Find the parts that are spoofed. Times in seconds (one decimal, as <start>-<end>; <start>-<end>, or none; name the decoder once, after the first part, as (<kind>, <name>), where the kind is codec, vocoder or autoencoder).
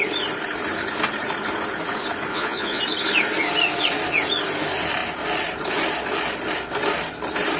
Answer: 2.3-2.8 (vocoder, Vocos)